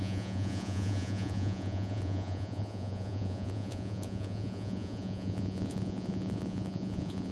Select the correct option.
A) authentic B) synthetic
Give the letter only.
B